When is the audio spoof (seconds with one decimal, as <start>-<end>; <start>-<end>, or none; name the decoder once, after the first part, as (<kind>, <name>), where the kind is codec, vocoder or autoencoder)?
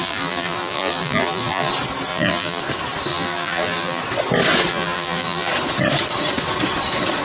0.0-1.7 (vocoder, BigVGAN v2); 2.1-2.6; 3.1-4.0; 4.7-5.5